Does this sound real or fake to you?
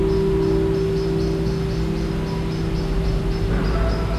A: real